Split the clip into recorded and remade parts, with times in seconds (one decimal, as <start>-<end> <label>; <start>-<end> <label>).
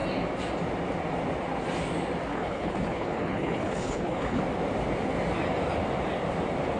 0.0-2.3 recorded; 2.3-4.4 remade; 4.4-6.8 recorded